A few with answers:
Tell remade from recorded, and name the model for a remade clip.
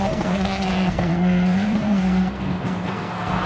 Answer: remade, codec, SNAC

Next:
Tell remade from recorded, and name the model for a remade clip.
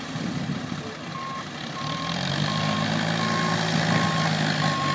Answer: recorded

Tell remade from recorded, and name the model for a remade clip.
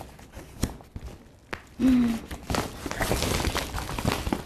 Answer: recorded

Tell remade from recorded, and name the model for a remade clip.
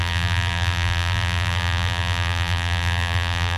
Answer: remade, vocoder, BigVGAN v2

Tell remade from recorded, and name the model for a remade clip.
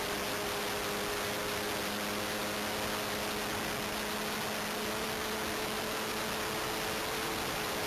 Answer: recorded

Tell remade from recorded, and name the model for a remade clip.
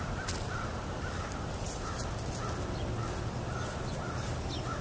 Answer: recorded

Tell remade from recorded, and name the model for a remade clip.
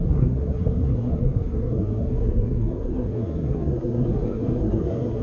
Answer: remade, codec, SNAC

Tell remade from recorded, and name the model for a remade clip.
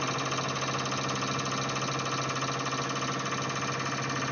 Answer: recorded